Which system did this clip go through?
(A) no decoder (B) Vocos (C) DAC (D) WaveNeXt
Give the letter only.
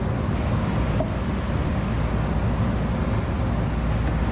A